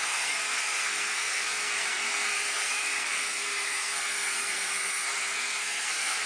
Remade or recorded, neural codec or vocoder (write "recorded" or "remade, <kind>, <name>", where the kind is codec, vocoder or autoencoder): remade, codec, SNAC